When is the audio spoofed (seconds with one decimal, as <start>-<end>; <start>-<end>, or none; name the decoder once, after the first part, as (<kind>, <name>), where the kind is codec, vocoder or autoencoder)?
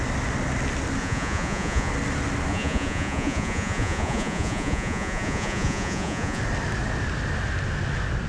1.0-1.9 (vocoder, Vocos); 2.5-6.4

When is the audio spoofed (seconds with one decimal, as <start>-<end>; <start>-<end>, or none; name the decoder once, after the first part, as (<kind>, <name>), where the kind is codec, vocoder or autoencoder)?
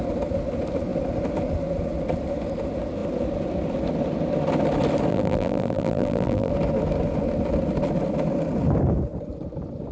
5.1-6.5 (vocoder, BigVGAN v2)